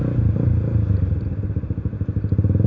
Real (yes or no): yes